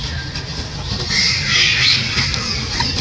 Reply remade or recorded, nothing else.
recorded